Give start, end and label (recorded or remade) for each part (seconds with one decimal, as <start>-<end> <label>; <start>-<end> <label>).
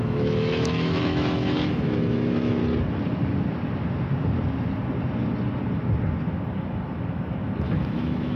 0.0-2.6 remade; 2.6-7.6 recorded; 7.6-8.4 remade